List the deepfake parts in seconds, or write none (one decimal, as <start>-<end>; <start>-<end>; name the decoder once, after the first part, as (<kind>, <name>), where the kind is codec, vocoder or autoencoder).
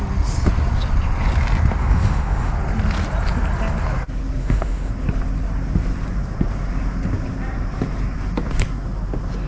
1.8-2.5 (autoencoder, DAC-VAE); 4.4-4.9